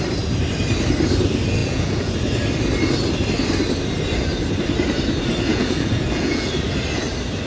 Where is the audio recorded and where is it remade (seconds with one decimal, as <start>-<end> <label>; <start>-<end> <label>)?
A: 0.0-1.6 recorded; 1.6-2.1 remade; 2.1-5.5 recorded; 5.5-6.5 remade; 6.5-7.5 recorded